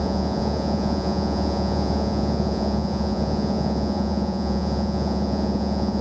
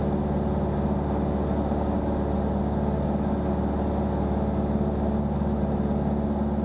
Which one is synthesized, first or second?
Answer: first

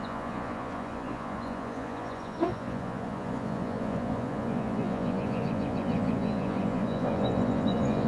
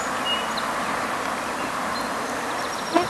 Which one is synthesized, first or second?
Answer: first